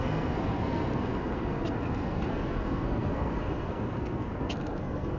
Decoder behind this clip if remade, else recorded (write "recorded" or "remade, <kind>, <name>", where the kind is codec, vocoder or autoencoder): remade, codec, SNAC